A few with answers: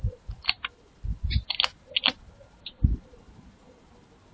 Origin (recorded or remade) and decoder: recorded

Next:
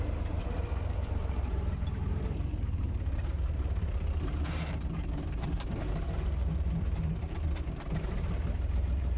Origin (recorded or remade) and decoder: remade, vocoder, BigVGAN v2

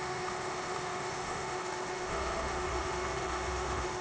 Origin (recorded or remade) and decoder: remade, autoencoder, DAC-VAE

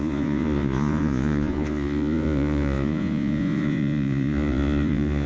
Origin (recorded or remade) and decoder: remade, vocoder, Vocos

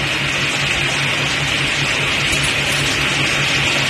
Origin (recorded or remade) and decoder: recorded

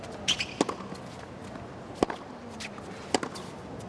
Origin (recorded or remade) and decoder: recorded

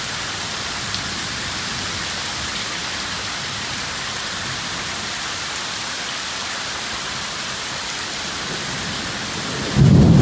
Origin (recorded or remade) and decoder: recorded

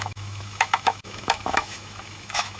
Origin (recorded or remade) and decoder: remade, autoencoder, DAC-VAE